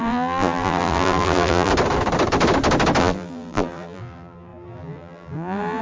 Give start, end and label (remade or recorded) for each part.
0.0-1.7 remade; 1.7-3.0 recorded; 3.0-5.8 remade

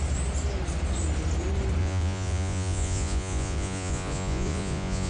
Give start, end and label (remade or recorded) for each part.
0.0-1.8 recorded; 1.8-5.1 remade

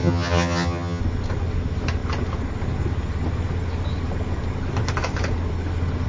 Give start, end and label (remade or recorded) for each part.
0.0-1.0 remade; 1.0-6.1 recorded

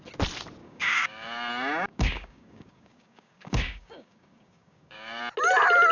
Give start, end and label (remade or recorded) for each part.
0.0-0.6 recorded; 0.6-1.5 remade; 1.5-1.9 recorded; 1.9-5.2 remade; 5.2-5.9 recorded

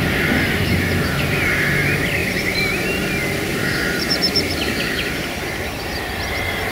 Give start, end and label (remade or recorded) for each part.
0.0-2.2 recorded; 2.2-2.9 remade; 2.9-3.5 recorded; 3.5-5.3 remade; 5.3-6.7 recorded

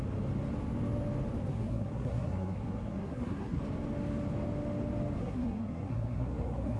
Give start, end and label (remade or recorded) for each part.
0.0-1.5 recorded; 1.5-3.6 remade; 3.6-5.2 recorded; 5.2-6.8 remade